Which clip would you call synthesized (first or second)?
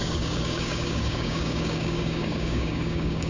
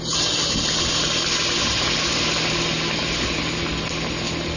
first